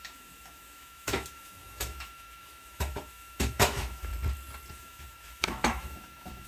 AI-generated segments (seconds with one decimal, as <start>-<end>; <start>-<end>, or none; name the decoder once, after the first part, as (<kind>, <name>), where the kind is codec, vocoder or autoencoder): 0.0-4.1 (autoencoder, DAC-VAE); 4.7-6.5